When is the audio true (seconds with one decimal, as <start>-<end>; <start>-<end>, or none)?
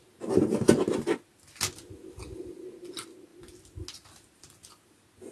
0.0-5.3